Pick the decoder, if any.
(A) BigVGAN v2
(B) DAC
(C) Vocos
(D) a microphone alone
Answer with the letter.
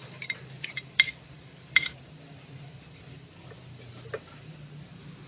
A